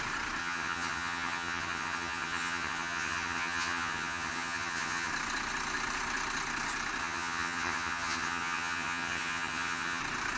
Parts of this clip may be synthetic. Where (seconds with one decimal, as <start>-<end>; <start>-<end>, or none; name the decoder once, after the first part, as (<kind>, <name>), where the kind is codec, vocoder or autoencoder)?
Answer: 0.4-5.1 (vocoder, HiFi-GAN); 7.0-10.0